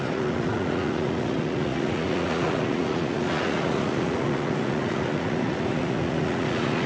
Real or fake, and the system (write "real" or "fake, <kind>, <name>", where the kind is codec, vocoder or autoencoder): fake, vocoder, Vocos